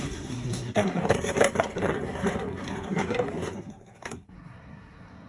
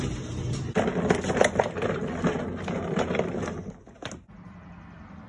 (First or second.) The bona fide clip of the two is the second